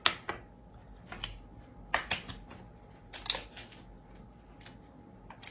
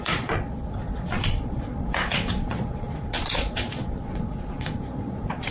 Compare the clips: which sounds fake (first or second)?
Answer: second